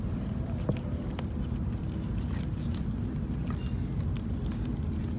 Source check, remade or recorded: recorded